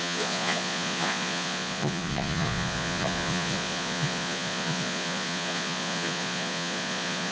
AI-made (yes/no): yes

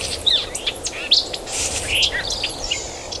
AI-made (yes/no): no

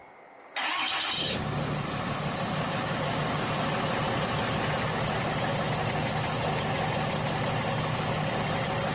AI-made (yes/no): no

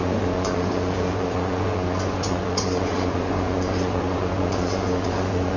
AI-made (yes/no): yes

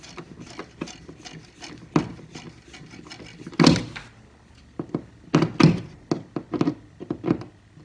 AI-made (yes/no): no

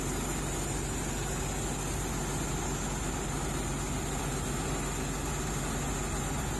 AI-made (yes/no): no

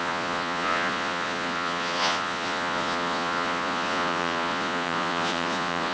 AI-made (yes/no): yes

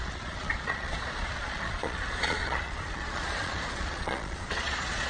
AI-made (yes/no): yes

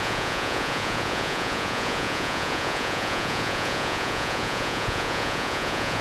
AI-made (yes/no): yes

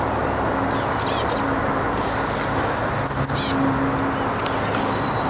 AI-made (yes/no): no